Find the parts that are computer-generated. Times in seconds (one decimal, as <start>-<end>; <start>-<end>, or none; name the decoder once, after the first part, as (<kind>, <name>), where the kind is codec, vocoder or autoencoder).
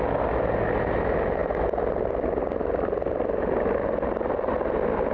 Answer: none